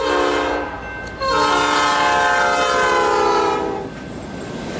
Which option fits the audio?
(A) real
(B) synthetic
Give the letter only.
A